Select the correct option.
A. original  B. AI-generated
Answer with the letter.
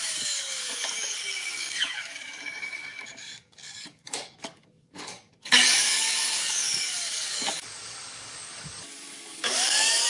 B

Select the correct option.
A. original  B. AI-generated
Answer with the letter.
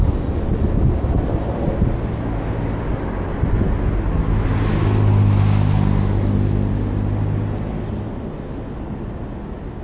A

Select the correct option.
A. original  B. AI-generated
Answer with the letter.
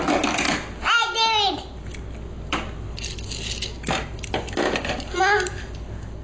A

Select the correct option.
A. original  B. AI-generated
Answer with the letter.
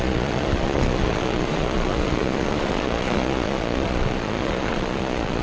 B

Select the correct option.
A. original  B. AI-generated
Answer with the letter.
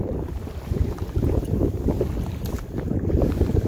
A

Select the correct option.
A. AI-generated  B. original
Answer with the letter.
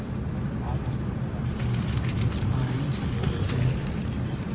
B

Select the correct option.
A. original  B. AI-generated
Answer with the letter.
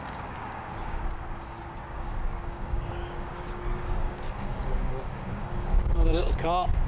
B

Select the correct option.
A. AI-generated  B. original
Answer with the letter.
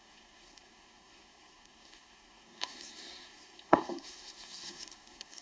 A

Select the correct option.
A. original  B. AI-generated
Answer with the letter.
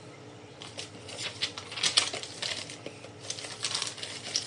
A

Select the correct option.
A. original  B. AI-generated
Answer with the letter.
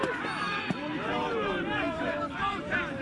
B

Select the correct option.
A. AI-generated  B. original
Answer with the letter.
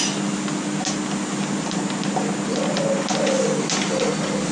B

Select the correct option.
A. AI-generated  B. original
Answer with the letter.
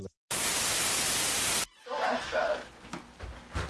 B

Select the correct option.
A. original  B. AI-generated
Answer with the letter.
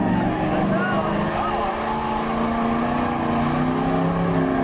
A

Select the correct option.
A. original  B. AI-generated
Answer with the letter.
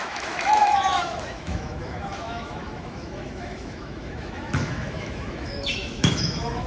B